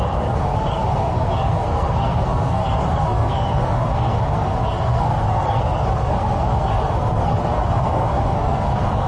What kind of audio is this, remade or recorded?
remade